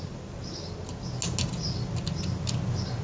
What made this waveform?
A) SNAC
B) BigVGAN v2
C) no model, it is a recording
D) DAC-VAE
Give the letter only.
C